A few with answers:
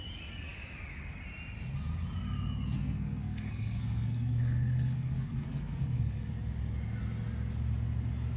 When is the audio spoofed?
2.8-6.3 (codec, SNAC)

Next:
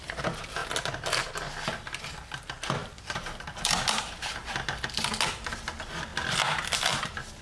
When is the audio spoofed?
none